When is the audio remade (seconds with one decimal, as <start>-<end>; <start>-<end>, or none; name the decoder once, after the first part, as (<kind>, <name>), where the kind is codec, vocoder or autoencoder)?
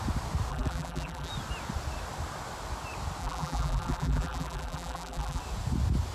0.5-1.3 (vocoder, BigVGAN v2); 3.2-5.4